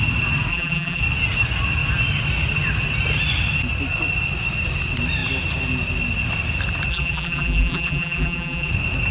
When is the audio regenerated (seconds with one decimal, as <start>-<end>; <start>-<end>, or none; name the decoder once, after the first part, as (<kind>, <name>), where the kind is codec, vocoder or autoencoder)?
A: 0.5-1.0 (vocoder, BigVGAN v2); 6.9-8.7